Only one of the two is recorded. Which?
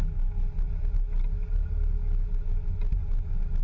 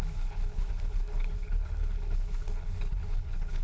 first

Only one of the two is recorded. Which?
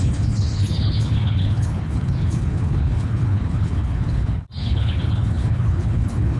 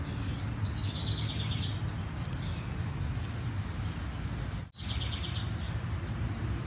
second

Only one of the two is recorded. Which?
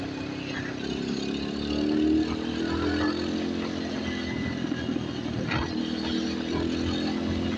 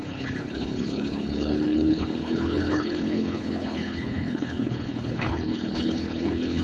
first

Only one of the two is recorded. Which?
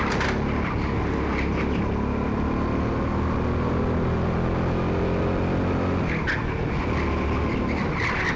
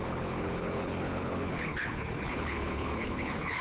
first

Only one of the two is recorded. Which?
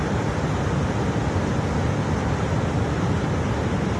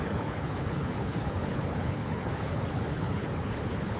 first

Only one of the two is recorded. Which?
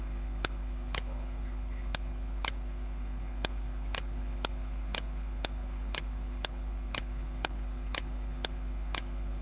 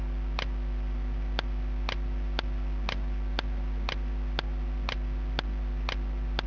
second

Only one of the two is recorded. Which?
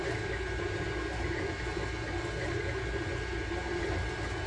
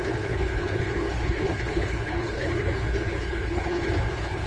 first